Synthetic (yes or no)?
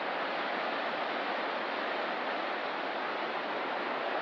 no